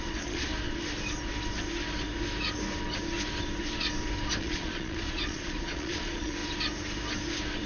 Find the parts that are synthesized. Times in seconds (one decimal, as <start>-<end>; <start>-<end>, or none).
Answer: 0.0-0.5; 4.4-6.4